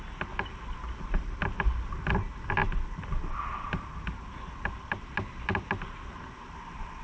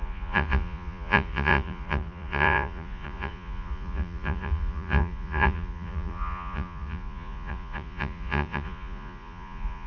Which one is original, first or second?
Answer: first